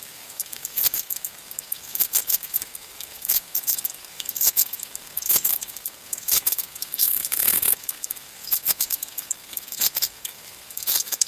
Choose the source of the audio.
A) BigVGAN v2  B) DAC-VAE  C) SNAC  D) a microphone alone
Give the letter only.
C